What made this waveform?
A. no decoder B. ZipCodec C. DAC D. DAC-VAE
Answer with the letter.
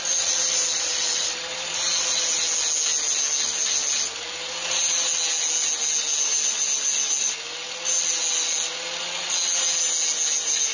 A